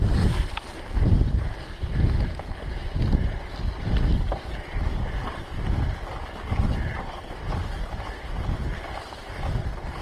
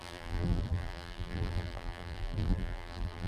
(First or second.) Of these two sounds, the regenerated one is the second